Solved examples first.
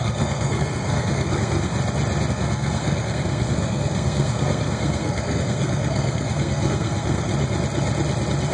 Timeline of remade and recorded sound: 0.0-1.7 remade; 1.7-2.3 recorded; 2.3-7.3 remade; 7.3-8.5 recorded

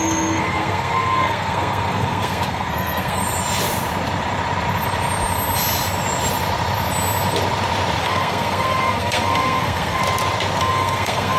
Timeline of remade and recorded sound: 0.0-3.2 remade; 3.2-8.0 recorded; 8.0-10.0 remade; 10.0-10.6 recorded; 10.6-11.4 remade

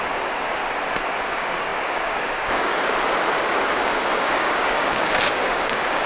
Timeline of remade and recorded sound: 0.0-0.6 remade; 0.6-1.2 recorded; 1.2-2.7 remade; 2.7-3.4 recorded; 3.4-6.1 remade

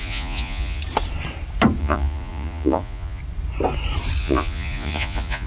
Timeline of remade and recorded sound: 0.0-0.8 remade; 0.8-1.8 recorded; 1.8-3.2 remade; 3.2-4.2 recorded; 4.2-5.5 remade

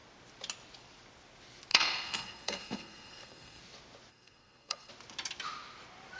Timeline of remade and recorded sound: 0.0-1.7 recorded; 1.7-3.6 remade; 3.6-4.1 recorded; 4.1-4.9 remade; 4.9-6.2 recorded

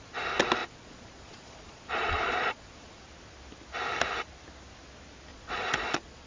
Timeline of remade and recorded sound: 0.0-0.6 recorded; 0.6-3.0 remade; 3.0-5.3 recorded; 5.3-6.3 remade